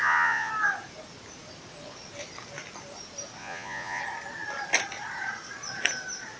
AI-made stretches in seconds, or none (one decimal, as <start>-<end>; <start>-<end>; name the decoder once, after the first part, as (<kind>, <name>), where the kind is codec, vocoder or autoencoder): 0.0-0.5 (vocoder, Vocos); 3.4-4.0

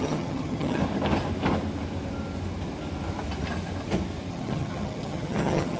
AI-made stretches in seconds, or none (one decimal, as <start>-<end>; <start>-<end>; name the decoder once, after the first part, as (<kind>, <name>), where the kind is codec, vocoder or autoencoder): 0.0-0.8 (vocoder, HiFi-GAN); 4.3-5.8

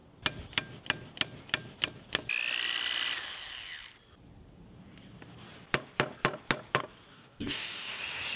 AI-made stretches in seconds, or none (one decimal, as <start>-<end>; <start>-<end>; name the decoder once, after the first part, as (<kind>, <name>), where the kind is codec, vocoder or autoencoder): 7.1-8.0 (codec, DAC)